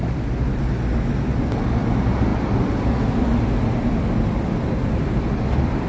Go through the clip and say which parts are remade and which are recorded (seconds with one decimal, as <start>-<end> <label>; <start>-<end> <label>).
0.0-5.9 recorded